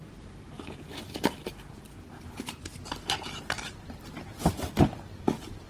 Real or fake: real